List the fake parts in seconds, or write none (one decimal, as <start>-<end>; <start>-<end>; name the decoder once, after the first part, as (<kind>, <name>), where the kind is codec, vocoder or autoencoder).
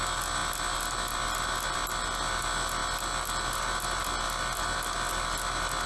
none